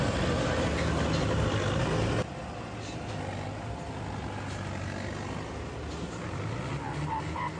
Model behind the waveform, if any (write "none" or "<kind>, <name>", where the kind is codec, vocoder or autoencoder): none